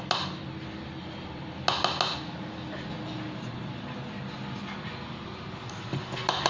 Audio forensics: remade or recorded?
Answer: recorded